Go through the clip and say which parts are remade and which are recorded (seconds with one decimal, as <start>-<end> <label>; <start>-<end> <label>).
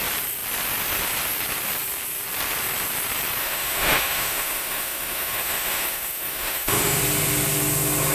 0.0-3.4 recorded; 3.4-7.0 remade; 7.0-8.1 recorded